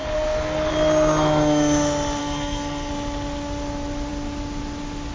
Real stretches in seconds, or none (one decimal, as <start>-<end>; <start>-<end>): 0.7-2.2; 2.9-5.1